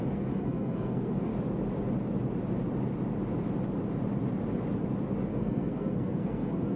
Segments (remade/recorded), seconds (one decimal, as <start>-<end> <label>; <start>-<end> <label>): 0.0-1.3 remade; 1.3-5.3 recorded; 5.3-6.8 remade